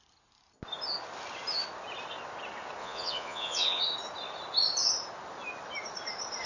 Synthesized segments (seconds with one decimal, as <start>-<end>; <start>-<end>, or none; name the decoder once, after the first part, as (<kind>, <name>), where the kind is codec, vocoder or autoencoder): 2.8-3.8 (vocoder, Vocos)